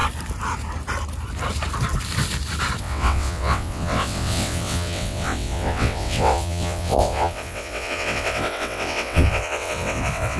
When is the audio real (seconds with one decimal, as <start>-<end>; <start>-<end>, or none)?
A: 0.0-2.8